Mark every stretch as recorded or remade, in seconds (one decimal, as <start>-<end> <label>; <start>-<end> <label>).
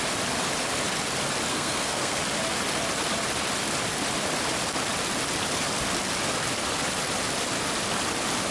0.0-1.5 recorded; 1.5-2.2 remade; 2.2-8.5 recorded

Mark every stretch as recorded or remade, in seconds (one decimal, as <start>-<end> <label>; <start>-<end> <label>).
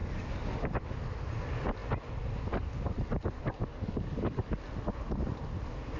0.0-1.0 remade; 1.0-3.7 recorded; 3.7-4.5 remade; 4.5-6.0 recorded